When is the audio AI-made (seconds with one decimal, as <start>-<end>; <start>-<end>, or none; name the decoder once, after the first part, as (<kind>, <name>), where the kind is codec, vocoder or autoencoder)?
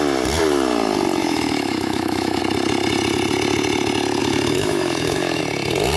1.2-2.4 (autoencoder, DAC-VAE); 4.2-5.4